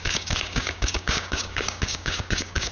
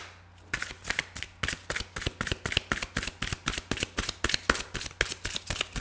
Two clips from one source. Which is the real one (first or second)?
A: second